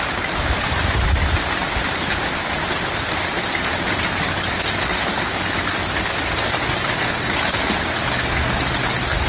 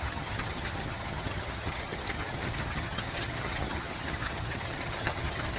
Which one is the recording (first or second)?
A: first